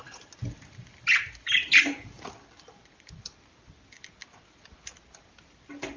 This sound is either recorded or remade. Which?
recorded